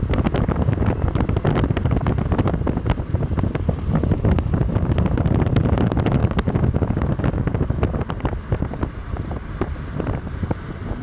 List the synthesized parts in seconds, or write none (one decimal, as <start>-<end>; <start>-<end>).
0.0-6.2; 8.5-11.0